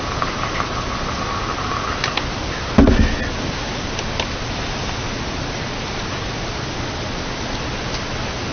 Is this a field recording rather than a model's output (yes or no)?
yes